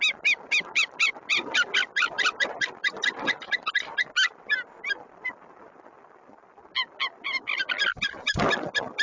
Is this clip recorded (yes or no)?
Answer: yes